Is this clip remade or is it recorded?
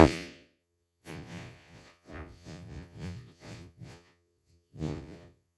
remade